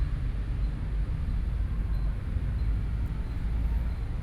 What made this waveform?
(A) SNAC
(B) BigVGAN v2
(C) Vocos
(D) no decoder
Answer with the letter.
D